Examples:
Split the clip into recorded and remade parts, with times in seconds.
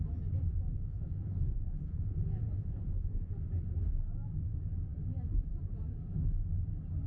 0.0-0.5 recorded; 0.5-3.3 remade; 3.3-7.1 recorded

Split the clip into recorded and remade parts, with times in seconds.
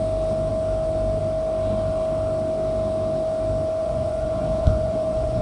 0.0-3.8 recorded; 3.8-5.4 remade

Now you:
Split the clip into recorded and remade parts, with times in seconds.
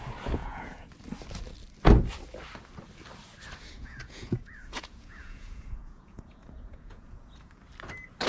0.0-0.4 recorded; 0.4-0.9 remade; 0.9-3.7 recorded; 3.7-7.5 remade; 7.5-8.3 recorded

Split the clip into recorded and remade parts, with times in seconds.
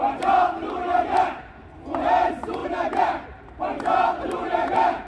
0.0-0.6 recorded; 0.6-1.4 remade; 1.4-2.6 recorded; 2.6-3.6 remade; 3.6-5.1 recorded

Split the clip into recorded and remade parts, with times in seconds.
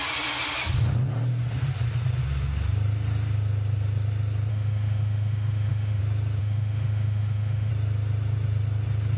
0.0-4.5 recorded; 4.5-6.0 remade; 6.0-6.4 recorded; 6.4-7.7 remade; 7.7-9.2 recorded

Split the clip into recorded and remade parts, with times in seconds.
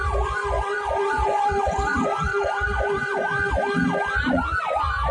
0.0-3.3 remade; 3.3-4.3 recorded; 4.3-5.1 remade